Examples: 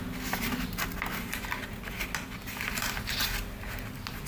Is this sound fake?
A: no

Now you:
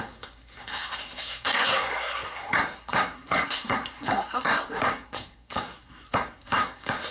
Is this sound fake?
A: yes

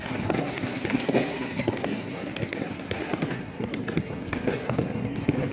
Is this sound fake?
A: yes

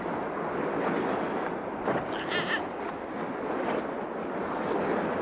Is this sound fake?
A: no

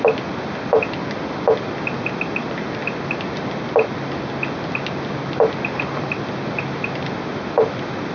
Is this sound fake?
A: no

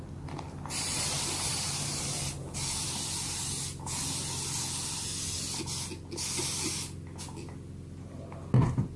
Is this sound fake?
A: no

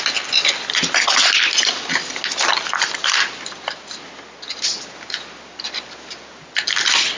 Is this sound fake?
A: no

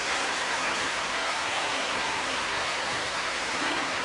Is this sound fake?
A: yes